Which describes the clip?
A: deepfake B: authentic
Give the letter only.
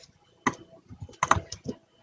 B